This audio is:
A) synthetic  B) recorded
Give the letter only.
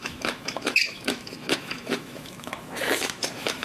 A